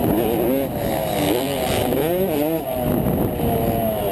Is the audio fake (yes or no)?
no